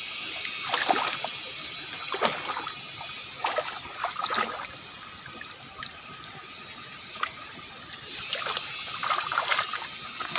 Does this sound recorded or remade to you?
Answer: recorded